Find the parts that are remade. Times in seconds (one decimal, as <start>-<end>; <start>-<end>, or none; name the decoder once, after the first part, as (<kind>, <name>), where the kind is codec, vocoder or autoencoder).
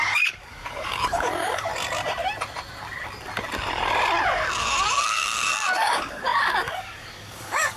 0.0-1.7 (codec, DAC); 4.6-7.8